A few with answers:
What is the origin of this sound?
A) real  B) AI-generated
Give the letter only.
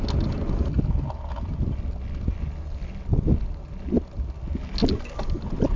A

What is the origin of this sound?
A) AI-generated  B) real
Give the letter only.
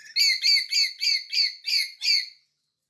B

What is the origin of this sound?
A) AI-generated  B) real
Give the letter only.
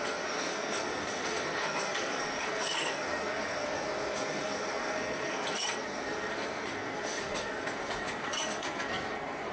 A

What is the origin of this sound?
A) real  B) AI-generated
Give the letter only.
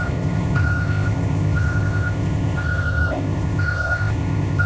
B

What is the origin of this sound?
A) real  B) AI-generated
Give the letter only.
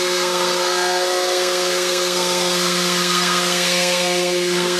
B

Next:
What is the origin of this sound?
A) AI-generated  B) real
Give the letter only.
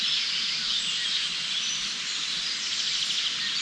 B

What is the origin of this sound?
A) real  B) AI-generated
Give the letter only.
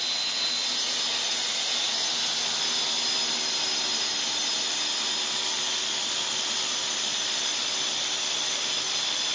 A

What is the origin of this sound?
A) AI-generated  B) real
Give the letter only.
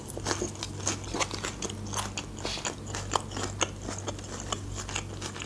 B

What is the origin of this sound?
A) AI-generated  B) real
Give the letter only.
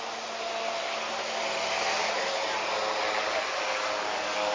B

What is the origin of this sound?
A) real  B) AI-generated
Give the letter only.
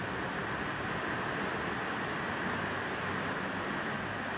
A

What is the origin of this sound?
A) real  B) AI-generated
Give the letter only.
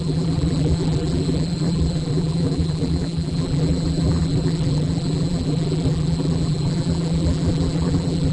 B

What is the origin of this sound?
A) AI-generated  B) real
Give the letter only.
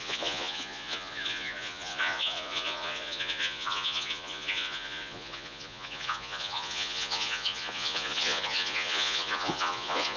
A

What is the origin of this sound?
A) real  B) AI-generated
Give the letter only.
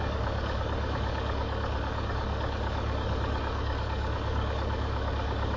B